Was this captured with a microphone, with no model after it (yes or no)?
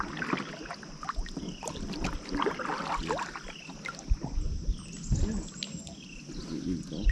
yes